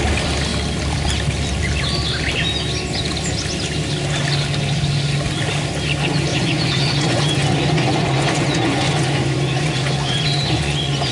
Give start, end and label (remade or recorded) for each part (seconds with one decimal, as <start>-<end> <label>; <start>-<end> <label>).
0.0-6.3 recorded; 6.3-11.1 remade